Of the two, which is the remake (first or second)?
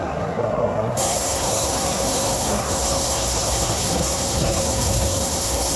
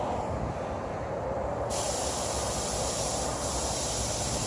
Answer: first